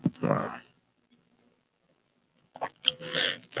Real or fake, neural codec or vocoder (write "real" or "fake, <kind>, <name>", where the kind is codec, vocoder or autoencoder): fake, vocoder, BigVGAN v2